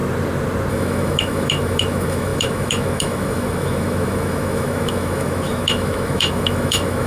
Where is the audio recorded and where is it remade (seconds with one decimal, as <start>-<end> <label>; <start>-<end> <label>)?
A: 0.0-0.7 recorded; 0.7-7.1 remade